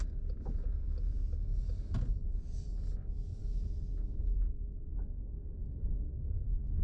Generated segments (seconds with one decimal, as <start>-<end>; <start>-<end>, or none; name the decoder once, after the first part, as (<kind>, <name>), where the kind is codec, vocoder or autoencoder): 4.9-6.8 (codec, SNAC)